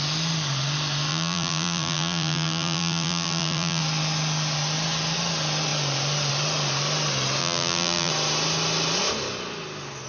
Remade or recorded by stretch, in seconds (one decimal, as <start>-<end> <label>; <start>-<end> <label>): 0.0-1.1 recorded; 1.1-3.8 remade; 3.8-7.4 recorded; 7.4-8.1 remade; 8.1-10.1 recorded